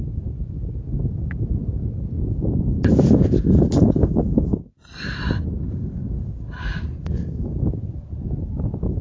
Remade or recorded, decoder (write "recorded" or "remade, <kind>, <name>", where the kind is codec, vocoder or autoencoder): recorded